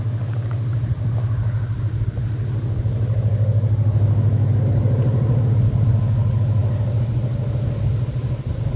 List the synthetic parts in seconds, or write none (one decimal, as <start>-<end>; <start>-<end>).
none